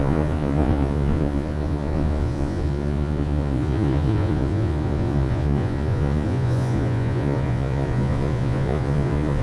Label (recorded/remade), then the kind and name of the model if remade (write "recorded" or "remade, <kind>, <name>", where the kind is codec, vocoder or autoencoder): remade, vocoder, Vocos